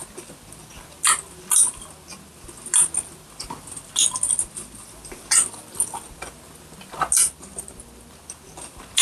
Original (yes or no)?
yes